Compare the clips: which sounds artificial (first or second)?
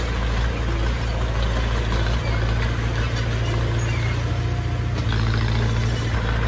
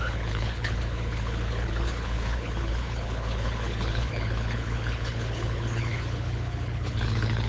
second